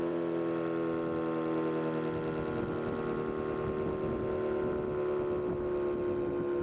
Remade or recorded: remade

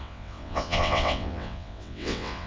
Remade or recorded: remade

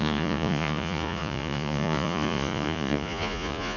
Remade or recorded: remade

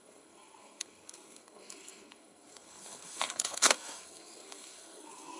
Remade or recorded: remade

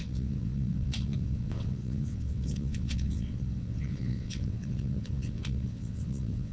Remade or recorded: remade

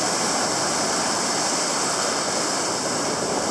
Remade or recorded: recorded